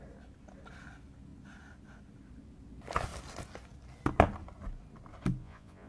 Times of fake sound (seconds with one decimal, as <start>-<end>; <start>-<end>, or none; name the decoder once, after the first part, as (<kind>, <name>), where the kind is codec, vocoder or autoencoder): 5.4-5.9 (vocoder, Vocos)